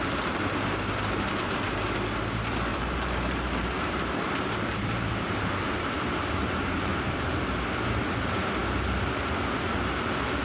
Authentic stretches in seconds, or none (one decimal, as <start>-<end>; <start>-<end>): 0.0-2.7; 7.4-10.4